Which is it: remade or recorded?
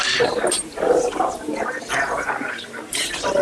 recorded